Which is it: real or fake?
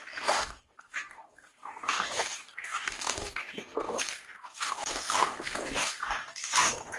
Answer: fake